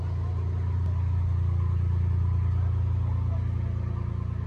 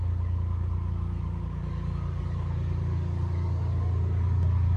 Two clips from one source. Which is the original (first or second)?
first